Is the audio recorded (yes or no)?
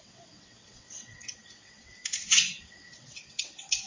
no